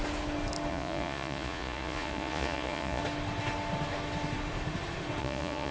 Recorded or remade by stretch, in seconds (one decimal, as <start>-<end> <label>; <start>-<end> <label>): 0.0-0.7 recorded; 0.7-3.0 remade; 3.0-5.2 recorded; 5.2-5.7 remade